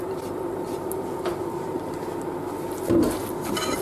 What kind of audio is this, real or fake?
real